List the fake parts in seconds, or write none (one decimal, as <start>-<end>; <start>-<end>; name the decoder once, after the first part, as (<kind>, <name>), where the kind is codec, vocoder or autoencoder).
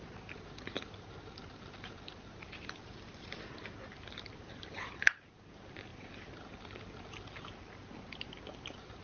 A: 0.0-5.9 (vocoder, BigVGAN v2); 8.6-9.0